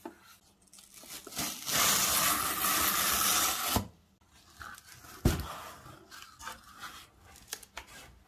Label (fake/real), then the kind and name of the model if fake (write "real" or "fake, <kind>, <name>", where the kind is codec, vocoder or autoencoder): real